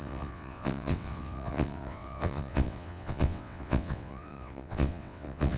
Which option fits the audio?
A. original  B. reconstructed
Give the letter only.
B